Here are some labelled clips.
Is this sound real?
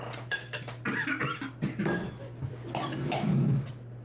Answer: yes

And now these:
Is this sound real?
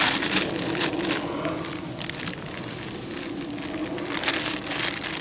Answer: yes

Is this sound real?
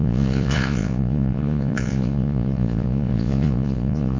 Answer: no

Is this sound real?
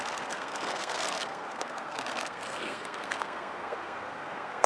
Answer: no